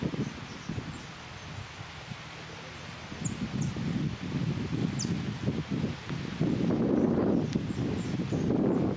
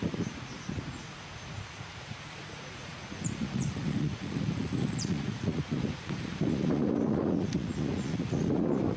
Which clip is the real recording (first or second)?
first